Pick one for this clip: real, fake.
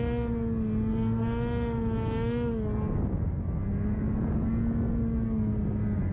real